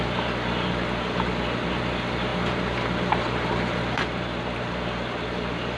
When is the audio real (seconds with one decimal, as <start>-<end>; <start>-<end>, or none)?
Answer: 0.0-2.3; 3.2-5.8